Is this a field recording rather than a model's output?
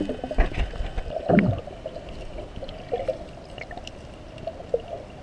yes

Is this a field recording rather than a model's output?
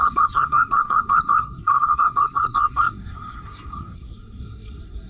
no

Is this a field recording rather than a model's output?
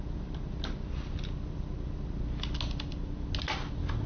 yes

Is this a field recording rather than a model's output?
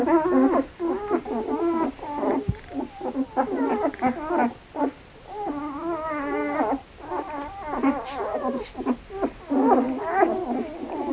yes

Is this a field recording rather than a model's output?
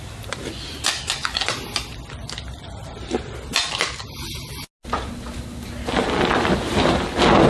yes